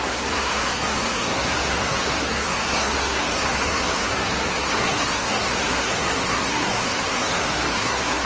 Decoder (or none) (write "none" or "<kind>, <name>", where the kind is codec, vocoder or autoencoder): codec, SNAC